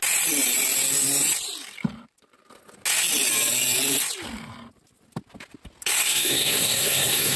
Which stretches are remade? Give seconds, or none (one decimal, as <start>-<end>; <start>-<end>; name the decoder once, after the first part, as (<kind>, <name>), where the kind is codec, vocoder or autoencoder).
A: 6.0-7.4 (codec, SNAC)